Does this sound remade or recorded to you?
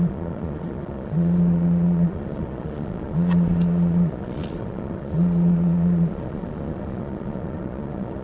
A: remade